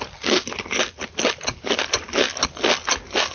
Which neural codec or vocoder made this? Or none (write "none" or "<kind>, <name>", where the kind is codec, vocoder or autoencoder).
none